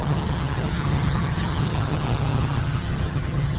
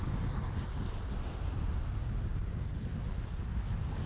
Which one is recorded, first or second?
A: second